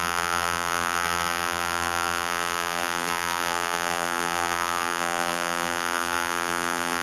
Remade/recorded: remade